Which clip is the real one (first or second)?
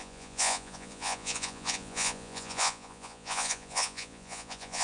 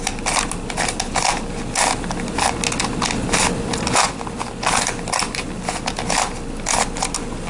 second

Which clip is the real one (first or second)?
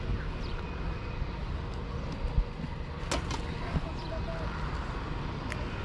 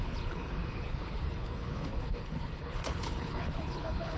first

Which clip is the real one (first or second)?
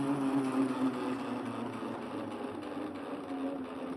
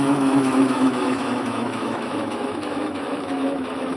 first